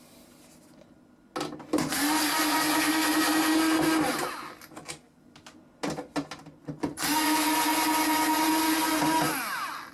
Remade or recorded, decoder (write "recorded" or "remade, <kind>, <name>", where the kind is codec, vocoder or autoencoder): recorded